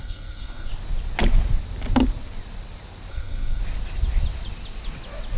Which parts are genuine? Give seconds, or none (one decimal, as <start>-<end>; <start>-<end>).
0.7-3.1; 3.6-5.4